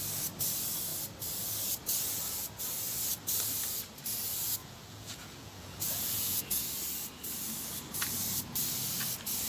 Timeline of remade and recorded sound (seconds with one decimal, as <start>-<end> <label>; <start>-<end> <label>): 0.0-4.6 recorded; 4.6-6.4 remade; 6.4-9.5 recorded

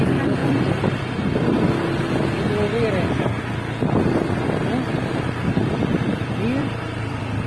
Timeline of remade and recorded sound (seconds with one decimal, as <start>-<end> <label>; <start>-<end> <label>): 0.0-0.4 recorded; 0.4-1.0 remade; 1.0-6.6 recorded; 6.6-7.5 remade

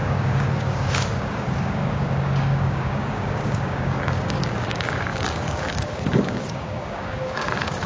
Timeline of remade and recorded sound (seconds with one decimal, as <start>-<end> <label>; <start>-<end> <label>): 0.0-7.9 remade

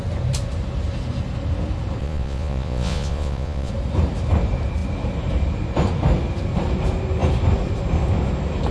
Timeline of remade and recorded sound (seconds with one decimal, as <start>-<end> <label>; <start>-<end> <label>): 0.0-2.0 recorded; 2.0-3.7 remade; 3.7-8.7 recorded

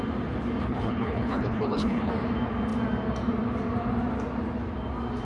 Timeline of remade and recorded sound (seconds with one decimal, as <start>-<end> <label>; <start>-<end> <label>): 0.0-0.6 recorded; 0.6-2.1 remade; 2.1-5.2 recorded

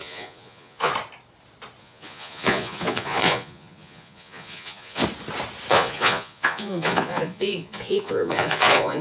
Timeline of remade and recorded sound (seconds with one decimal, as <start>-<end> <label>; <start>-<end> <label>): 0.0-0.9 remade; 0.9-1.8 recorded; 1.8-5.0 remade; 5.0-5.7 recorded; 5.7-9.0 remade